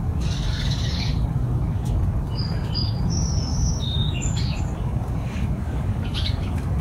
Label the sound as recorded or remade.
remade